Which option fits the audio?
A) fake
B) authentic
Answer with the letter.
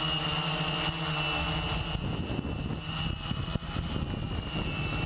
B